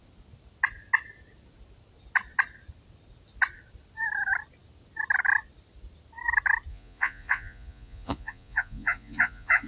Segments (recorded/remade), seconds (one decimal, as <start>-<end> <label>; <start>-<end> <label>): 0.0-6.7 recorded; 6.7-9.7 remade